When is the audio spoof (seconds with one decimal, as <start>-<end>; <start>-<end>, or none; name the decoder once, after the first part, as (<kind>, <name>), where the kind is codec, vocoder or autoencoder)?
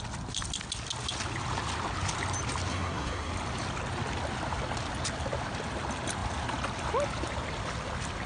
2.7-3.3 (codec, SNAC)